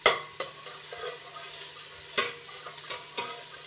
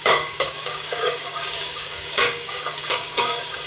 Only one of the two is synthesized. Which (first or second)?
second